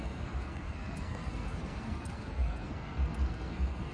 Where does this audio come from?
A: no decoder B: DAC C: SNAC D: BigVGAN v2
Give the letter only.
C